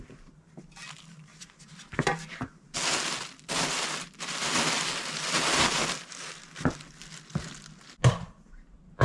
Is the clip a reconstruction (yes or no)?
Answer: no